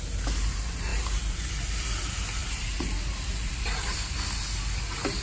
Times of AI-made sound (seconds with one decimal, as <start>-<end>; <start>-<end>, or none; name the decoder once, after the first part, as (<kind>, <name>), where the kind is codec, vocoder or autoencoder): 0.9-1.5 (vocoder, BigVGAN v2); 2.4-3.6